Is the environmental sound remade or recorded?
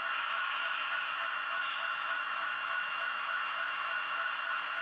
remade